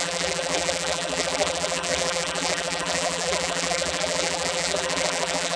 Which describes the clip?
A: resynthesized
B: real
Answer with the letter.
A